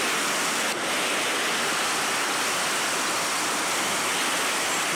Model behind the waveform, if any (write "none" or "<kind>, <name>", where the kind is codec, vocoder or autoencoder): none